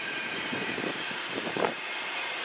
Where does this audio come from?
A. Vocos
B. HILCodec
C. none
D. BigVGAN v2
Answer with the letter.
D